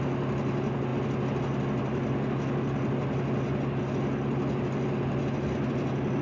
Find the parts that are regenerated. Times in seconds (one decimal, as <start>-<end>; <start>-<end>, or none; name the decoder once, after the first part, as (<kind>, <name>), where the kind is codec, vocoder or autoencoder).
none